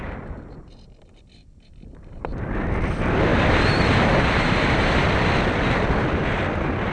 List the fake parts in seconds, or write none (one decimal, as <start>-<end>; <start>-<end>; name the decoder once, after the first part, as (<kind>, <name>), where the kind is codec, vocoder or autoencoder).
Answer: 1.4-2.4 (vocoder, BigVGAN v2); 3.3-5.2